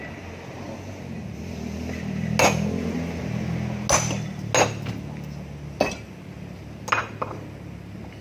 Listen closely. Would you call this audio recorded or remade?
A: recorded